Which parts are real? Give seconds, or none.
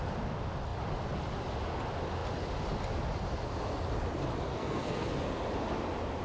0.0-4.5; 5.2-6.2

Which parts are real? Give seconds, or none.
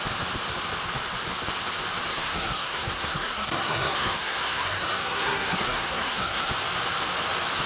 0.0-2.1; 6.5-7.7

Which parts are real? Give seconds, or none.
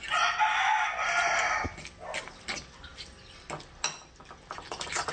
0.0-5.1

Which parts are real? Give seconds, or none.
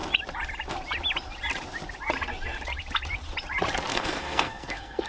0.0-3.9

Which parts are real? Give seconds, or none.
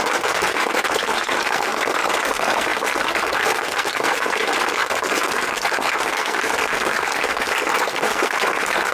none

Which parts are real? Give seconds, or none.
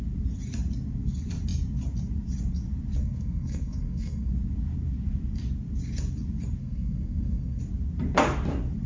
0.0-3.0; 4.3-6.6; 7.6-8.9